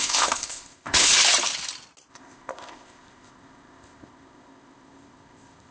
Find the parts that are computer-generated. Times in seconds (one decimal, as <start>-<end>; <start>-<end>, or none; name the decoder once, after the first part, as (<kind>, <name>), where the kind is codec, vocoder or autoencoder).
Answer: 0.0-1.1 (codec, ZipCodec); 2.1-5.7